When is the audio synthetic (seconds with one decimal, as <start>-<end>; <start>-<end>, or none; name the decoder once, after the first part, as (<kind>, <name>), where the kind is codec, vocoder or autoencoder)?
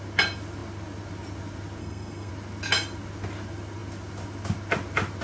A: 1.8-2.3 (codec, SNAC)